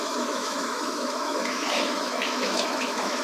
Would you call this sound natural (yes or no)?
no